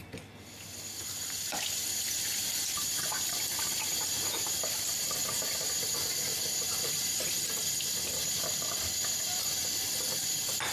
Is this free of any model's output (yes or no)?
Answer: yes